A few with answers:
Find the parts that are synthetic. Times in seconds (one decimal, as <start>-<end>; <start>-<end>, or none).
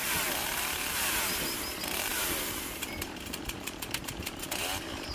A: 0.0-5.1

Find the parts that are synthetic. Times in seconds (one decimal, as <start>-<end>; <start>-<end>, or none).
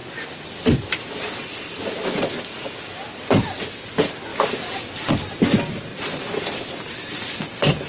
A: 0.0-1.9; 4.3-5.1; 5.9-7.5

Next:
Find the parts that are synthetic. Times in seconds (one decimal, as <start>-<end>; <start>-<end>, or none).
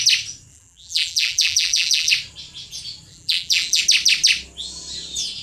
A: 0.5-2.1; 3.1-3.8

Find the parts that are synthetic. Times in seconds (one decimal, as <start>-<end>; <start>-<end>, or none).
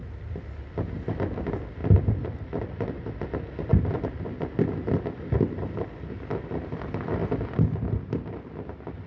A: 1.8-2.4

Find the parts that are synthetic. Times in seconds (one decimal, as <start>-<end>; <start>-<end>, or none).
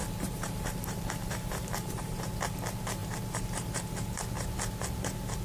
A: 0.0-2.3; 3.0-4.3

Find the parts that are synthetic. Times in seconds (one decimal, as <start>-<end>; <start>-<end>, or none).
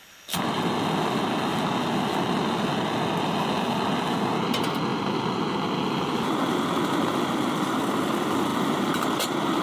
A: 8.5-9.6